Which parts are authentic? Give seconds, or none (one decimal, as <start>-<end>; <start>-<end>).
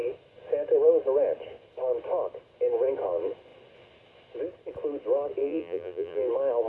0.0-5.4; 6.3-6.7